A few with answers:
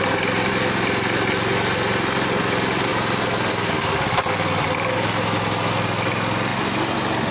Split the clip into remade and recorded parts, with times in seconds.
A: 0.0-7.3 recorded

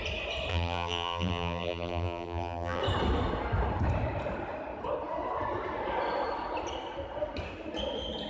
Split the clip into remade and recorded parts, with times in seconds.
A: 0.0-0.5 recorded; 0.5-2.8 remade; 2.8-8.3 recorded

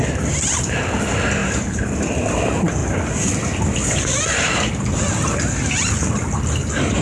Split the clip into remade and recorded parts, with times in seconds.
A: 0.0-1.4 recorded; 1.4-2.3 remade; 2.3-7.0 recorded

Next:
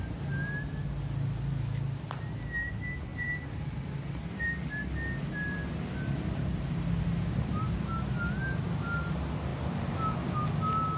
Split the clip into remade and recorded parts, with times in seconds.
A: 0.0-3.1 recorded; 3.1-4.7 remade; 4.7-11.0 recorded